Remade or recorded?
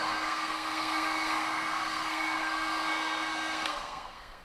remade